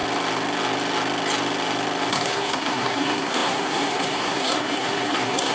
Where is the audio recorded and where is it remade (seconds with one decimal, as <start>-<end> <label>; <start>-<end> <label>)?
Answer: 0.0-2.1 recorded; 2.1-5.5 remade